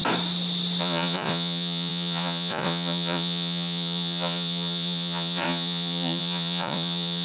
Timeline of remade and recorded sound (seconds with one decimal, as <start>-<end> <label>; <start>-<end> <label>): 0.0-0.8 recorded; 0.8-7.2 remade